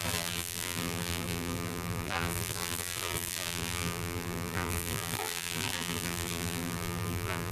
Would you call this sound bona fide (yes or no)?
no